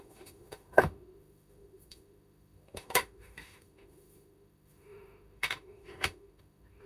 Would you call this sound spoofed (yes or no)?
yes